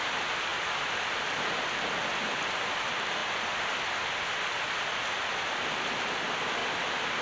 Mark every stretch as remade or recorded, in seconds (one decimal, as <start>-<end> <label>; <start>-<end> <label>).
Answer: 0.0-3.2 recorded; 3.2-3.8 remade; 3.8-6.6 recorded; 6.6-7.2 remade